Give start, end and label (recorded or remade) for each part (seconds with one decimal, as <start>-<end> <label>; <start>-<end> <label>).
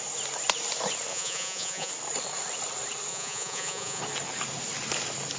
0.0-1.1 recorded; 1.1-1.9 remade; 1.9-3.1 recorded; 3.1-4.0 remade; 4.0-5.4 recorded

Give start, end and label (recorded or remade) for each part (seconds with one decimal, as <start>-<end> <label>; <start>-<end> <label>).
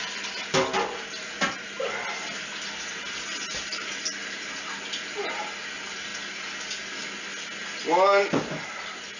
0.0-9.2 recorded